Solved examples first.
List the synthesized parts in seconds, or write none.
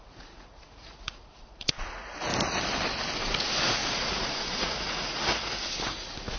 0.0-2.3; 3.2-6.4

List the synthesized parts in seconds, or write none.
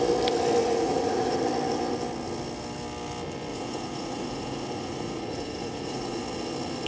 0.6-1.4; 3.5-6.2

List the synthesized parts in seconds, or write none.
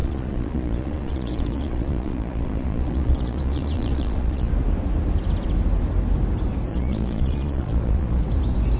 0.0-4.5; 6.7-8.2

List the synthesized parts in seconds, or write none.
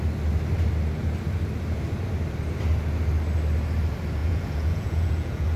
4.2-5.6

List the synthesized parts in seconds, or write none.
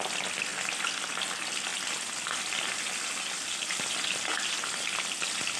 none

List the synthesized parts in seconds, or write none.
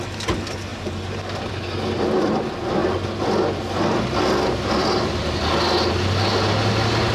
none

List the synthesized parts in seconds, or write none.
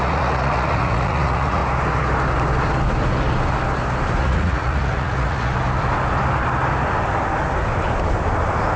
0.0-1.6; 4.2-5.5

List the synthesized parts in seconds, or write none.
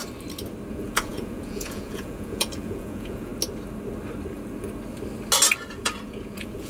0.7-3.3; 5.7-6.7